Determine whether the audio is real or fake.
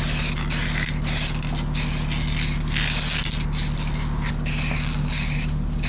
real